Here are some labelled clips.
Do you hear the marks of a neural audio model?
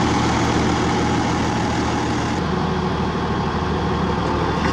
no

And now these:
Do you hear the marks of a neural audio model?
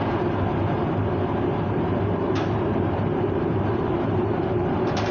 yes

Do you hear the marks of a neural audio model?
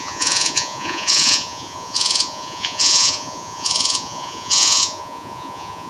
yes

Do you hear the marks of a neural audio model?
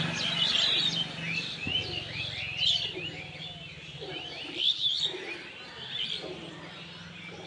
no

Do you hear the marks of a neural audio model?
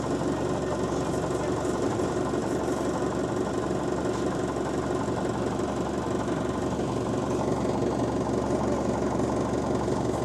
no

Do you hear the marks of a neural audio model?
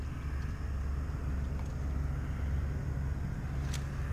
no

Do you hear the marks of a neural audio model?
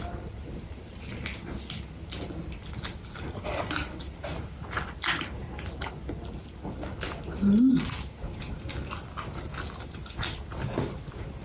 no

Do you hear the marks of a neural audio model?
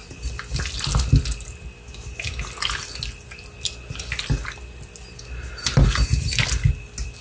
no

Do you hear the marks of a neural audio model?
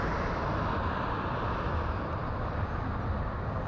no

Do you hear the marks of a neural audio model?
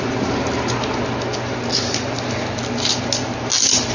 no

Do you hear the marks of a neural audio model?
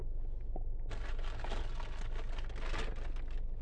no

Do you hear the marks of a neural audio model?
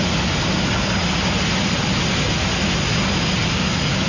no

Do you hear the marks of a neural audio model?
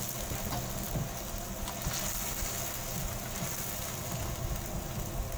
no